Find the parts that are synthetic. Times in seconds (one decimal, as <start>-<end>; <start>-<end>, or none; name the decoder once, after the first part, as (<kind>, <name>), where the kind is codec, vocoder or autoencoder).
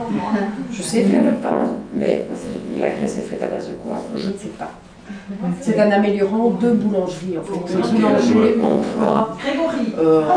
1.1-4.3 (vocoder, WaveNeXt); 8.6-9.2